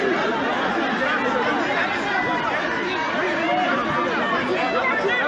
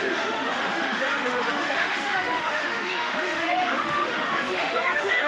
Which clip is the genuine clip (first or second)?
first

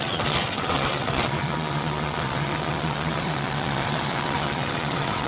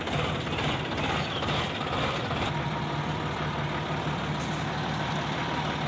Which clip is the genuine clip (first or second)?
second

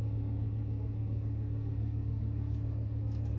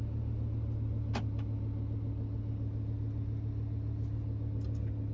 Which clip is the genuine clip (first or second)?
second